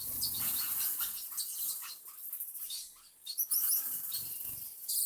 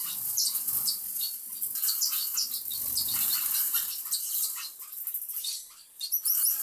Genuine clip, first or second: second